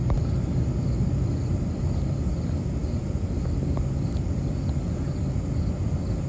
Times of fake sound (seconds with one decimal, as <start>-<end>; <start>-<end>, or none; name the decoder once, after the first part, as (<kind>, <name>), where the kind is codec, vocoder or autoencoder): none